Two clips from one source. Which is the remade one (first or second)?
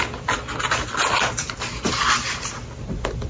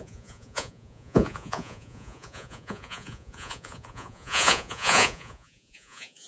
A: second